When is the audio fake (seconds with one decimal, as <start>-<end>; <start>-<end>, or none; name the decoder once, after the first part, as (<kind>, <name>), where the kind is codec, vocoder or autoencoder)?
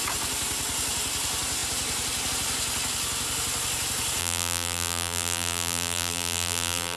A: 4.2-7.0 (vocoder, BigVGAN v2)